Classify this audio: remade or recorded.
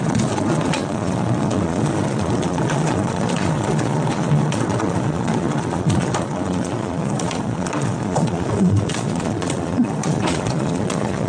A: remade